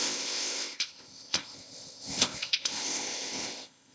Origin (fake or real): fake